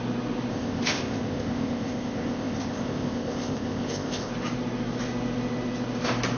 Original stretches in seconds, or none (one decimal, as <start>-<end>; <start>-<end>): 0.0-0.5; 4.3-6.4